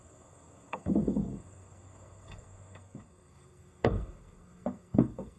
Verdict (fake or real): fake